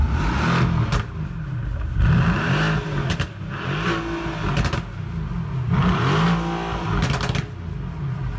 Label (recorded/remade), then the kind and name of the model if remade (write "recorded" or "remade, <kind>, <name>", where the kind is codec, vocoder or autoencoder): recorded